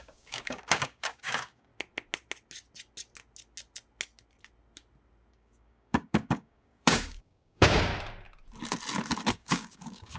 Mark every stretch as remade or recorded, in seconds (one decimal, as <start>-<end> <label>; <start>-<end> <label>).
0.0-1.7 remade; 1.7-5.3 recorded; 5.3-7.9 remade; 7.9-9.3 recorded; 9.3-10.2 remade

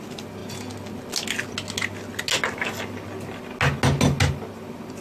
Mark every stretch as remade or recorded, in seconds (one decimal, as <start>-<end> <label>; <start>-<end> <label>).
0.0-5.0 recorded

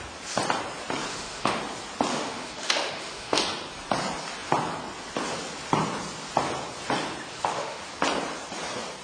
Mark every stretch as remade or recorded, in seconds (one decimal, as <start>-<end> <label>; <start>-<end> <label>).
0.0-1.1 recorded; 1.1-1.6 remade; 1.6-2.1 recorded; 2.1-3.4 remade; 3.4-7.3 recorded; 7.3-7.8 remade; 7.8-9.0 recorded

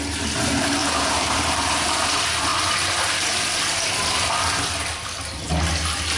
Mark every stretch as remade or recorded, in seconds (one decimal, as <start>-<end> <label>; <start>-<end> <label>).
0.0-0.8 recorded; 0.8-2.1 remade; 2.1-6.2 recorded

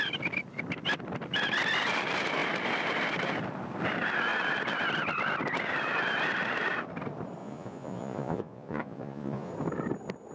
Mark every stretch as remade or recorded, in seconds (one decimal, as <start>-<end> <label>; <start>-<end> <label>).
0.0-7.4 recorded; 7.4-9.5 remade; 9.5-10.3 recorded

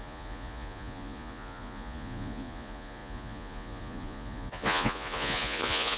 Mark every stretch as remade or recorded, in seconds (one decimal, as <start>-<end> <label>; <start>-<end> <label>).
0.0-6.0 remade